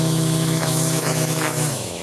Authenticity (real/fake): fake